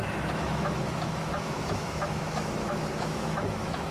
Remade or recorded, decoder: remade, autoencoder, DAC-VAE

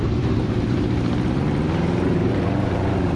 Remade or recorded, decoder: remade, vocoder, BigVGAN v2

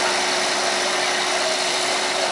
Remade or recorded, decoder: remade, vocoder, BigVGAN v2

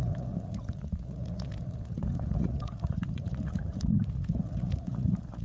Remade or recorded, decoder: remade, vocoder, Vocos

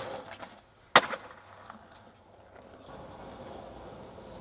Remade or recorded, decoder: recorded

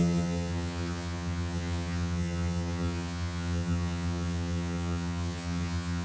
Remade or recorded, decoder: remade, vocoder, HiFi-GAN